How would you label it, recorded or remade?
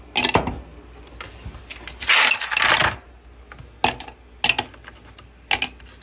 recorded